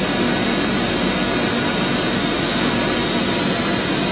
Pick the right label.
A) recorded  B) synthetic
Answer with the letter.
A